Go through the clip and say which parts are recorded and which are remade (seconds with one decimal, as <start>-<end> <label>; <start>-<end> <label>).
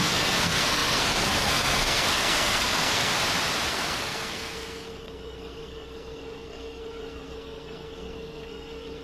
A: 0.0-3.1 remade; 3.1-3.7 recorded; 3.7-9.0 remade